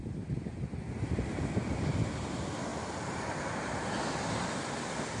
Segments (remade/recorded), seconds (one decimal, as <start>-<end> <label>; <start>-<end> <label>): 0.0-5.2 recorded

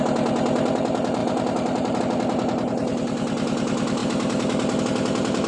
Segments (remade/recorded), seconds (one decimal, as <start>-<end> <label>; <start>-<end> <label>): 0.0-1.2 recorded; 1.2-2.0 remade; 2.0-5.5 recorded

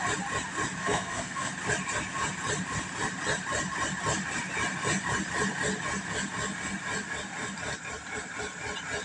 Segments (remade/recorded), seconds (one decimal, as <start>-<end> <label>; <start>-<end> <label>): 0.0-0.8 recorded; 0.8-1.5 remade; 1.5-9.0 recorded

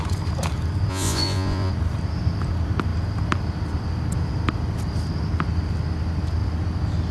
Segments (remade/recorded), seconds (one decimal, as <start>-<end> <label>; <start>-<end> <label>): 0.0-0.9 recorded; 0.9-1.7 remade; 1.7-7.1 recorded

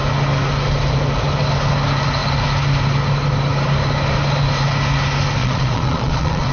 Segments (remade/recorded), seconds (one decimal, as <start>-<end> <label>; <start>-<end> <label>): 0.0-5.4 recorded; 5.4-6.5 remade

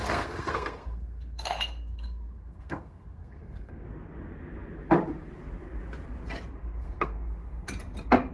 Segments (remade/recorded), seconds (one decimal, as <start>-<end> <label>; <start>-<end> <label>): 0.0-3.9 remade; 3.9-6.6 recorded; 6.6-7.7 remade; 7.7-8.3 recorded

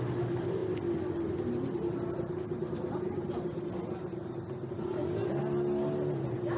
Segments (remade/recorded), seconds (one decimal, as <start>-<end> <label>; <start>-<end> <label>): 0.0-6.6 recorded

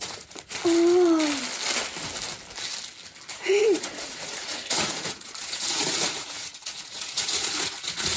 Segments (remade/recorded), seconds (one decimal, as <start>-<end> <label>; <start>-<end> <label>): 0.0-0.6 remade; 0.6-3.3 recorded; 3.3-8.2 remade